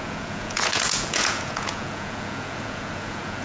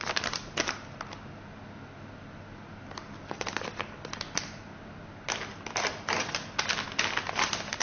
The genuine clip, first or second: second